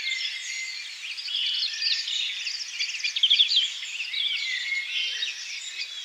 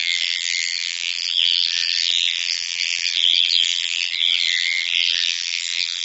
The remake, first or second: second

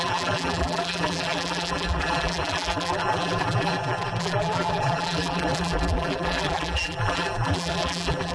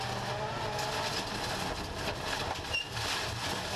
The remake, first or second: first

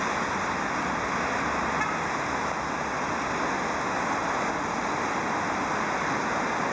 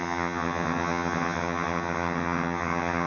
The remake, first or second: second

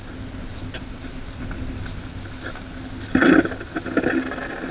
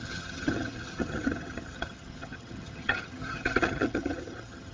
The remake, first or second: second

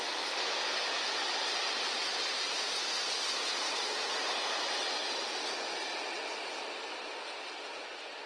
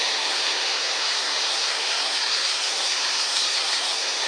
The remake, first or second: second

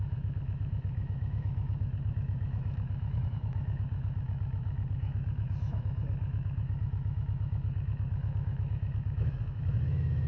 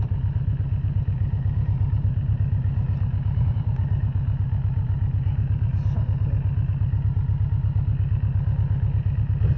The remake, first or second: first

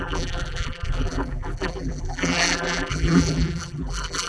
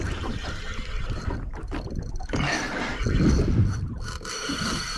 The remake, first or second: first